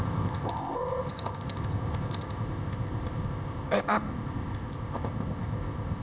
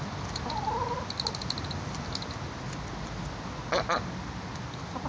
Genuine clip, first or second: second